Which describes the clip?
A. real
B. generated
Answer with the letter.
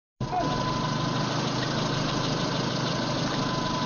A